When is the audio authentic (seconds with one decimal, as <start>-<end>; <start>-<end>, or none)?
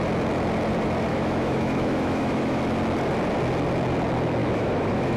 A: 0.0-1.1; 2.6-4.4